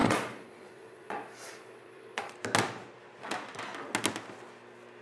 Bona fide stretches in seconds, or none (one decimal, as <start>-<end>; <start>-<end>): 2.3-5.0